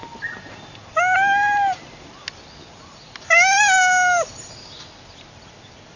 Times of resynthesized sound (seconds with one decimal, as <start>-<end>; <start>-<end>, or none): none